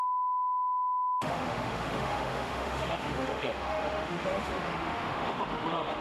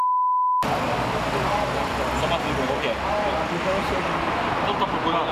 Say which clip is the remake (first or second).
first